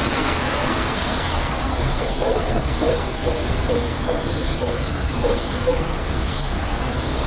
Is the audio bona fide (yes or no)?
no